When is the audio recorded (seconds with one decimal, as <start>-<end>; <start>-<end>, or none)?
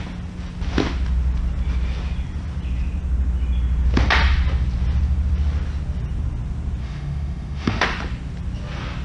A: 0.0-6.8; 7.8-9.0